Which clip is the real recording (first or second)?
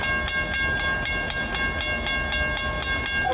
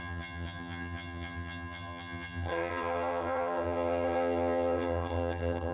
first